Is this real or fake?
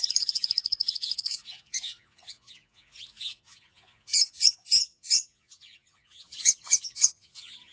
fake